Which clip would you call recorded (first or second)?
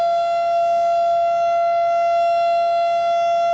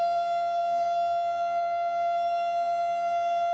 first